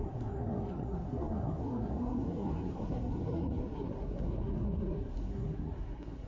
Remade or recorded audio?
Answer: remade